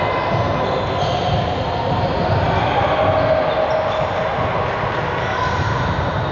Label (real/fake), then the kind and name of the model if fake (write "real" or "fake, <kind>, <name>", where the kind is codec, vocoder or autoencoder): real